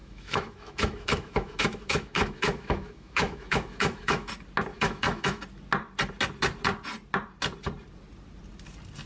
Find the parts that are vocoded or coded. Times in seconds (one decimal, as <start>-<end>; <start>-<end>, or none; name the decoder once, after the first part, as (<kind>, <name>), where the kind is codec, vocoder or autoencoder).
0.0-4.3 (autoencoder, DAC-VAE); 4.7-5.4